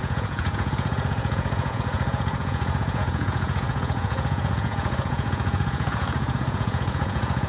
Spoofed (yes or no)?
yes